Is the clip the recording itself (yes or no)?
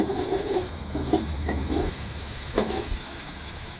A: no